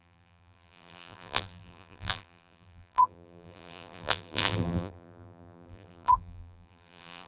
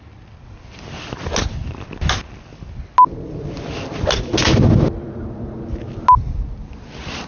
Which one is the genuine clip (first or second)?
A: second